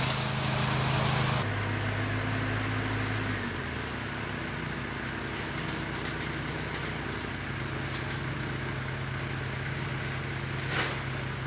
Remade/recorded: recorded